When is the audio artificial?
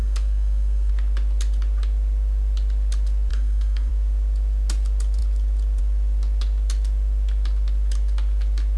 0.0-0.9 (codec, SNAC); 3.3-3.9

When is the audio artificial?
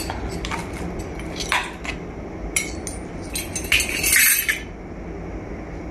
none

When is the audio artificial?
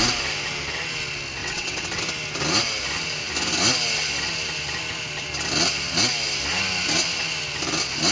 1.4-2.0 (vocoder, WaveNeXt)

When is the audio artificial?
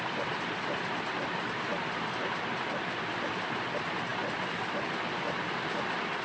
none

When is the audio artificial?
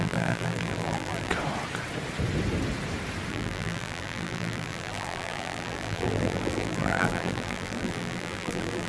0.0-1.3 (vocoder, BigVGAN v2); 3.3-8.9